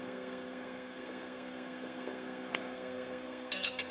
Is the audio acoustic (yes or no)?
no